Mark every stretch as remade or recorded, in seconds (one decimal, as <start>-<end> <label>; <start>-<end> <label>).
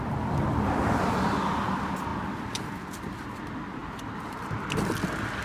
0.0-5.4 recorded